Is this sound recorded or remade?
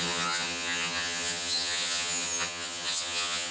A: remade